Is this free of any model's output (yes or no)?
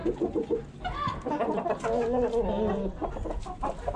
yes